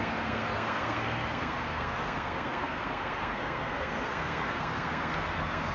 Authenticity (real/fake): fake